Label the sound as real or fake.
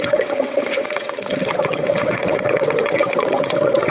fake